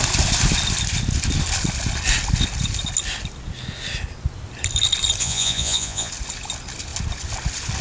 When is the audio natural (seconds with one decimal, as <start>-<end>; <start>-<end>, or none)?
0.0-5.2; 6.1-7.8